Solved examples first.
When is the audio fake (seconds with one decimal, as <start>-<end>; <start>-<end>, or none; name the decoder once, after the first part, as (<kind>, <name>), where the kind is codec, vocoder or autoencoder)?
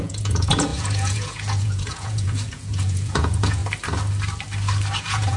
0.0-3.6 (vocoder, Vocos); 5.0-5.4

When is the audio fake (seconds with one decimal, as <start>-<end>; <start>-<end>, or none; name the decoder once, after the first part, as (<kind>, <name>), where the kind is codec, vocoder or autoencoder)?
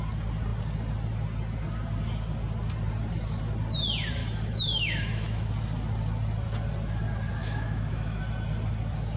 4.2-5.5 (autoencoder, DAC-VAE); 7.4-8.2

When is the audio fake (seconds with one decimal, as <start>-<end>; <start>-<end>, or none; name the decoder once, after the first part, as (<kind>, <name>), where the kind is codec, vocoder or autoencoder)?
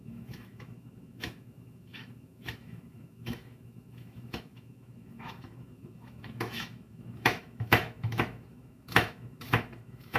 0.0-10.2 (autoencoder, DAC-VAE)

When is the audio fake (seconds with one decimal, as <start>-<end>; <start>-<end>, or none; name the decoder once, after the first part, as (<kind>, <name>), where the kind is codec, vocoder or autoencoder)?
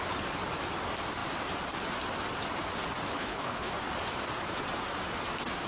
3.1-3.7 (codec, HILCodec)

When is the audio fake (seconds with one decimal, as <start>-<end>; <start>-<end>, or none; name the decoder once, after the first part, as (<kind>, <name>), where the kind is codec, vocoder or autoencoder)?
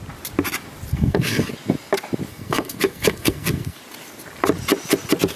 0.9-1.5 (codec, SNAC); 2.3-3.8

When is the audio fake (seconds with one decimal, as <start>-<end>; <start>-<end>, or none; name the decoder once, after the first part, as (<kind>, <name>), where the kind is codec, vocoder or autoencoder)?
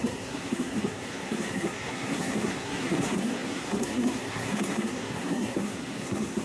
0.0-6.4 (codec, SNAC)